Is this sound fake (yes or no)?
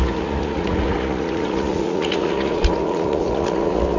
yes